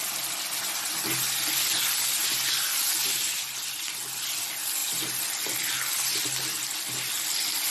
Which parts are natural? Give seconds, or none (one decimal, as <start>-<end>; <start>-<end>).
0.0-7.7